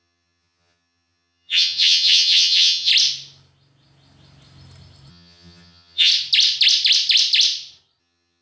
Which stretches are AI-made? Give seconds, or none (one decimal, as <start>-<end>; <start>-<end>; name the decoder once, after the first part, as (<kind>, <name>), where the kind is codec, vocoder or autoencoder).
0.0-2.9 (vocoder, HiFi-GAN); 5.1-6.1; 8.0-8.4